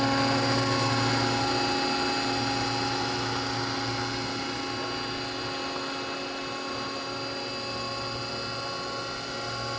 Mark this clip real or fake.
real